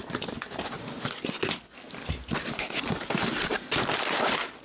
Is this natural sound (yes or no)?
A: yes